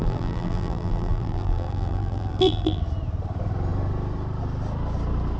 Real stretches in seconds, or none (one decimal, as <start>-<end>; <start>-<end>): 2.8-5.4